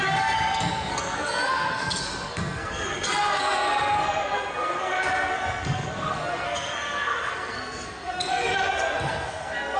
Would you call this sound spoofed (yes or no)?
yes